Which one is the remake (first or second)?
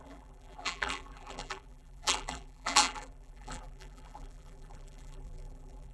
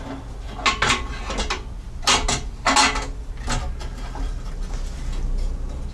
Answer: first